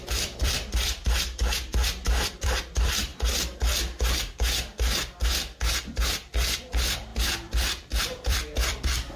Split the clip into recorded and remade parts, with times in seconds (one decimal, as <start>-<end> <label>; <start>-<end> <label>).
0.0-3.1 remade; 3.1-5.7 recorded; 5.7-7.1 remade; 7.1-8.0 recorded; 8.0-9.2 remade